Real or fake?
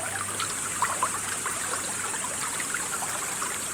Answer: real